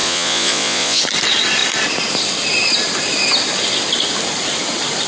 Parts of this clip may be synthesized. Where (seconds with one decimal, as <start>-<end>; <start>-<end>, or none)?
0.0-1.0